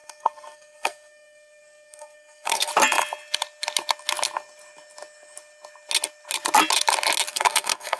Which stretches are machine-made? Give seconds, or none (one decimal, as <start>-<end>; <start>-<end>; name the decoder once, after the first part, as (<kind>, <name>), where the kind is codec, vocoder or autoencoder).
0.0-2.7 (codec, SNAC); 7.3-8.0